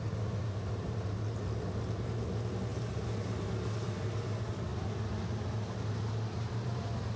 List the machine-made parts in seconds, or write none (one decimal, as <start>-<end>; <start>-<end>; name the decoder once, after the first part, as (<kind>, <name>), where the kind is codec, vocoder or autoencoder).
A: none